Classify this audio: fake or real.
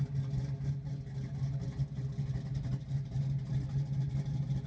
real